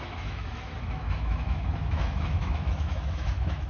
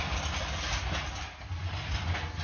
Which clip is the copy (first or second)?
first